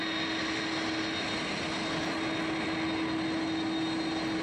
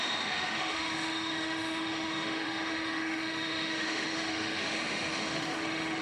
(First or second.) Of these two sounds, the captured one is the first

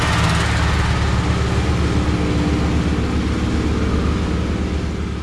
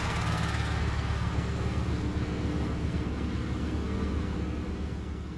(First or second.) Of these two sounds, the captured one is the first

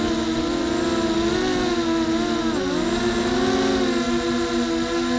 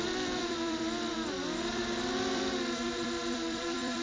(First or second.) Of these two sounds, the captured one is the first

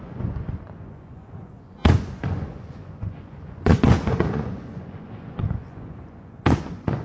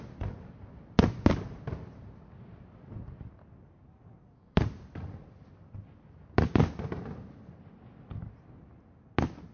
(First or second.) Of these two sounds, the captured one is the second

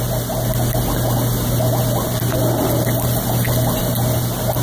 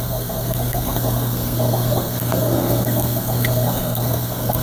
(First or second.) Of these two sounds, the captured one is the first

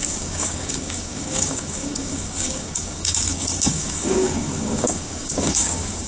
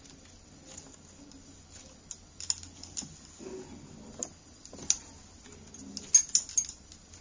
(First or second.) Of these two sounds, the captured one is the second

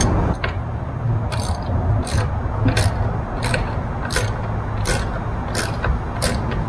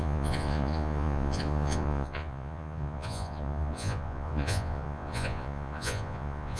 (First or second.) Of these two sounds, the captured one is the first